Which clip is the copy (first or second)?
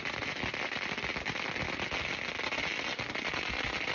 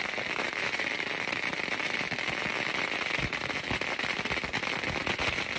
second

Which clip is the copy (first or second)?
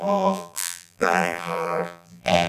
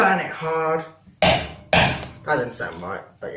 first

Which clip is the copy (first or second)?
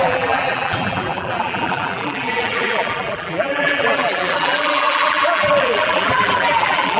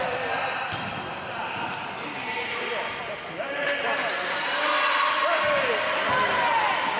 first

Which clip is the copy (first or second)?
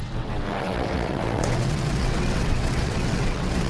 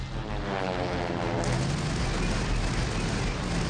first